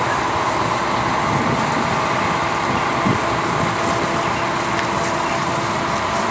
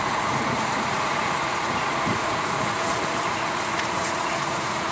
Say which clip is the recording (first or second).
first